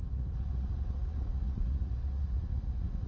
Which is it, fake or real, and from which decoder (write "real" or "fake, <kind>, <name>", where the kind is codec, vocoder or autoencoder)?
fake, vocoder, Vocos